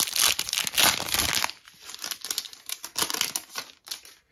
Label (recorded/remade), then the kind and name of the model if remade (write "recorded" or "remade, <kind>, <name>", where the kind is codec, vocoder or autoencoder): recorded